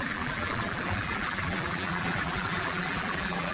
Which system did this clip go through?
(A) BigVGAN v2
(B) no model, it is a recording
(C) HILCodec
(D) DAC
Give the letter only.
A